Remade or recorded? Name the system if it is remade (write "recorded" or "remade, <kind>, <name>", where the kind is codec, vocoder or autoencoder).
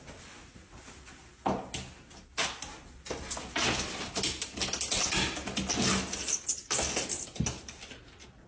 recorded